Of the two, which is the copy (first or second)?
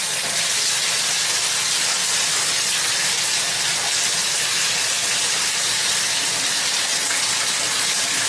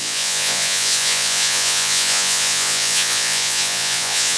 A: second